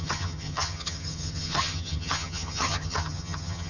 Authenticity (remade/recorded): remade